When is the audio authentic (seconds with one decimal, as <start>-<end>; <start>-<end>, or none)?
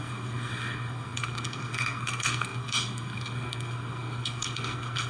none